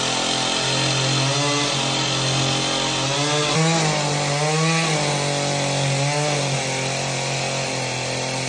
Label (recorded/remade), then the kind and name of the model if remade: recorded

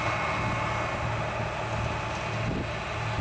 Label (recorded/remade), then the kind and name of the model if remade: recorded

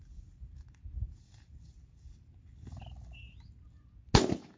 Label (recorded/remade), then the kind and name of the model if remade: recorded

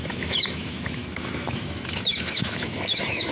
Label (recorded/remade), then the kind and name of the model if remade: remade, autoencoder, DAC-VAE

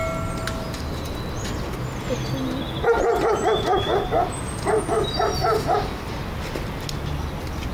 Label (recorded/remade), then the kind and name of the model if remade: recorded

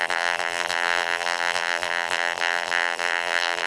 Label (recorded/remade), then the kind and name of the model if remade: remade, vocoder, BigVGAN v2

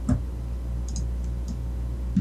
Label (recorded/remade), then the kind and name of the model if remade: recorded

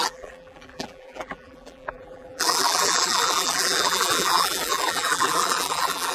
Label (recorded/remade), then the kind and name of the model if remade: remade, vocoder, BigVGAN v2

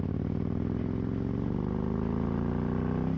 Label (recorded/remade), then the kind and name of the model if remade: recorded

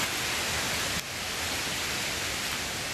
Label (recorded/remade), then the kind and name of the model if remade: recorded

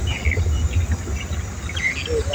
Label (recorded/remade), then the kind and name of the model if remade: recorded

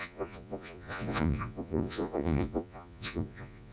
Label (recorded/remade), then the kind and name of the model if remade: remade, vocoder, Vocos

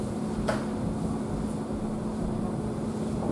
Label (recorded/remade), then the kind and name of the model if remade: recorded